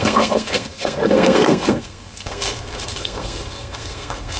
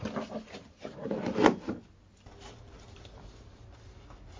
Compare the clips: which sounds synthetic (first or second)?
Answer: first